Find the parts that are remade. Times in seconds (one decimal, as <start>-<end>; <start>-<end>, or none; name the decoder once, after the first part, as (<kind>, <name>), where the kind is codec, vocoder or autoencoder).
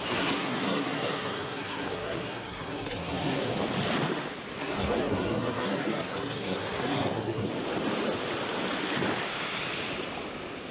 0.0-3.5 (codec, SNAC); 4.6-7.5